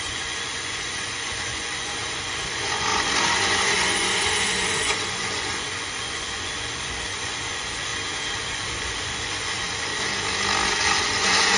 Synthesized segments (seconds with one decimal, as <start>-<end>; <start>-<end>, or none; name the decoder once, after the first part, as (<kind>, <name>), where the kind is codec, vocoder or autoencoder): 0.0-7.9 (vocoder, Vocos); 8.5-9.9; 11.0-11.6